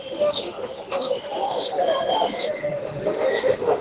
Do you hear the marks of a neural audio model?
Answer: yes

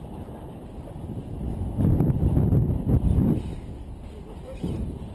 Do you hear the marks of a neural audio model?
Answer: no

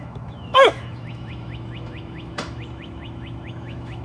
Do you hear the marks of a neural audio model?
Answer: yes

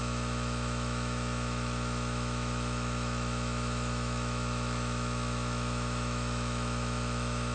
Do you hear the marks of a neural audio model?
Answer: yes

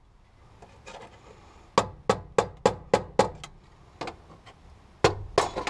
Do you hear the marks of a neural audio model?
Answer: no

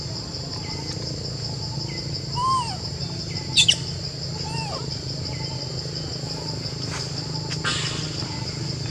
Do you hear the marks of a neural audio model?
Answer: no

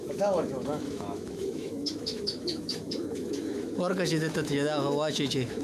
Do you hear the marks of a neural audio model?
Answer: yes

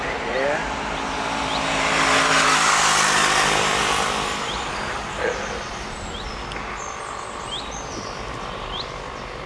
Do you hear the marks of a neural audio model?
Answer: no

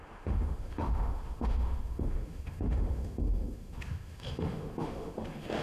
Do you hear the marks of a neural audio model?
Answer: yes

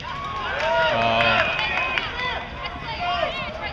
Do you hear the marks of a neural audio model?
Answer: no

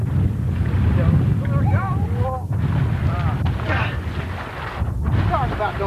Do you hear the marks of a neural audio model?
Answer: no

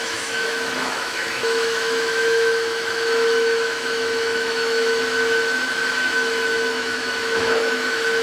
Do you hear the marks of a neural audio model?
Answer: yes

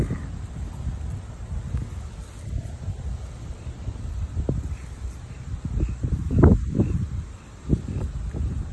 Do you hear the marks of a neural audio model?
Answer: no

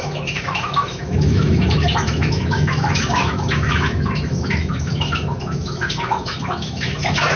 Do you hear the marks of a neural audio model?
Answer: yes